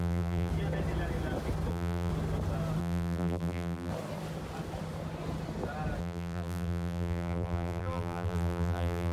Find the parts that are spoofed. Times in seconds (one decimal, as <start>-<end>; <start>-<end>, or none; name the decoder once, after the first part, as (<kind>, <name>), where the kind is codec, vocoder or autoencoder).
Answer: 0.0-0.5 (vocoder, BigVGAN v2); 1.7-2.1; 2.8-3.9; 6.0-9.1